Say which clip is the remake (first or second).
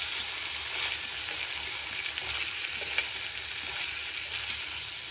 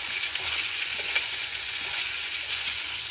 second